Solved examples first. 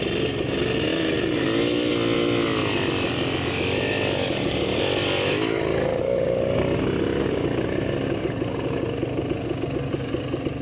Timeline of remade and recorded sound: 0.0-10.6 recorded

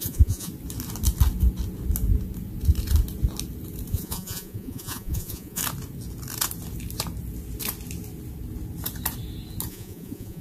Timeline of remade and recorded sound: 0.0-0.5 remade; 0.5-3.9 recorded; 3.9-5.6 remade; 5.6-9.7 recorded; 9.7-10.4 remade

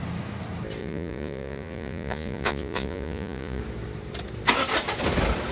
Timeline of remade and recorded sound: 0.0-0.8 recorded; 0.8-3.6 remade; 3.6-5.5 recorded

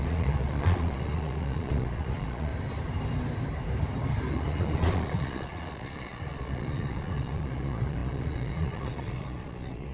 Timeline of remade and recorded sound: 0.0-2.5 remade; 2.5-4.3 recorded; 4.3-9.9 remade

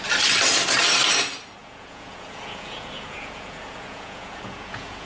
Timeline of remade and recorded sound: 0.0-1.6 recorded; 1.6-5.1 remade